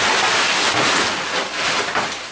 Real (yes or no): yes